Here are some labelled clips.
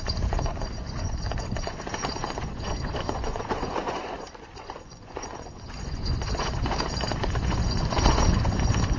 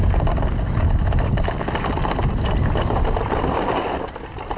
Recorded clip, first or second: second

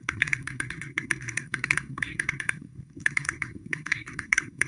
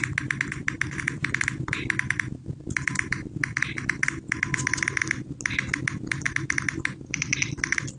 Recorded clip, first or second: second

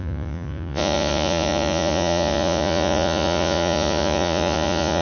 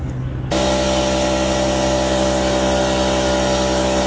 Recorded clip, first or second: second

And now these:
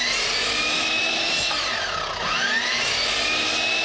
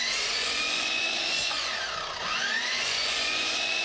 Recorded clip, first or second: first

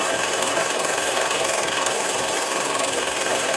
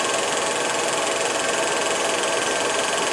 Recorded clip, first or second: second